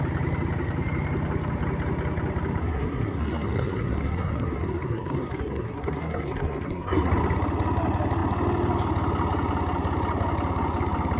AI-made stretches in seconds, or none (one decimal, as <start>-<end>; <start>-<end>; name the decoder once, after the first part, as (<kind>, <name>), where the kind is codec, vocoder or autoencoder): 2.6-7.1 (codec, SNAC)